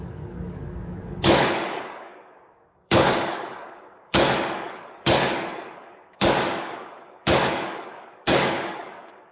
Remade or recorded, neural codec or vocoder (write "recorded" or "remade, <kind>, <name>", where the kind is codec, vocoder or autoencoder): remade, codec, DAC